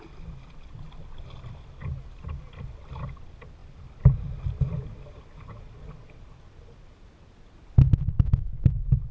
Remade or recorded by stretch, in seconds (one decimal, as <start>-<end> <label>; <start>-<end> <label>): 0.0-9.1 recorded